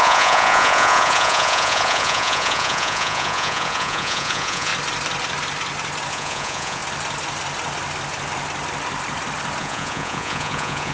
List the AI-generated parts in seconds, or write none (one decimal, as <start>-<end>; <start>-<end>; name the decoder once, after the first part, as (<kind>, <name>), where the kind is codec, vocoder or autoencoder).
0.0-4.7 (vocoder, Vocos); 6.1-6.8; 9.6-10.9